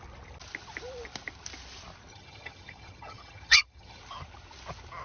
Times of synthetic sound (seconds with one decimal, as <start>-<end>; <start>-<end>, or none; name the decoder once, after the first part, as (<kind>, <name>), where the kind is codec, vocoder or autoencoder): 2.1-4.0 (vocoder, HiFi-GAN)